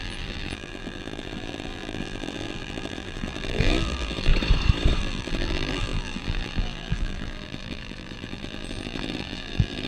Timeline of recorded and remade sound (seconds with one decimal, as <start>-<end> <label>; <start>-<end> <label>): 0.0-4.3 remade; 4.3-5.0 recorded; 5.0-9.9 remade